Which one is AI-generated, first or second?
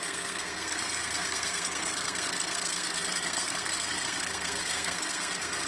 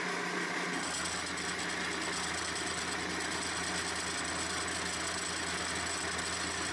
first